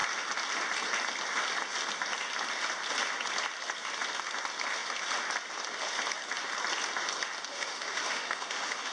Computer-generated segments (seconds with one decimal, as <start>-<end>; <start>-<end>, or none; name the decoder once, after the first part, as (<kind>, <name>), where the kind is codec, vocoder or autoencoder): 7.5-8.9 (autoencoder, DAC-VAE)